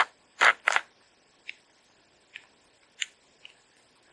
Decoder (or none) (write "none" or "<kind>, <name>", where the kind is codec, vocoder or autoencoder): none